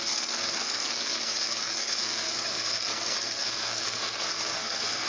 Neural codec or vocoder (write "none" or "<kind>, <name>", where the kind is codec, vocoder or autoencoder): codec, SNAC